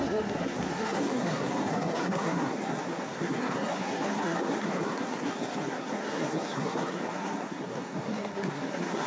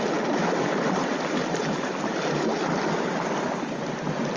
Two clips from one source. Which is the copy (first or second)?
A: first